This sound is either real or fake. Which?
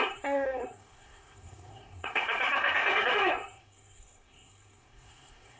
fake